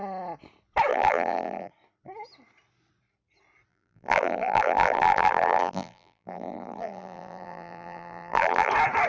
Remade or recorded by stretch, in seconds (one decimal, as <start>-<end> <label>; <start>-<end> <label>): 0.0-0.9 recorded; 0.9-1.7 remade; 1.7-3.7 recorded; 3.7-8.7 remade; 8.7-9.1 recorded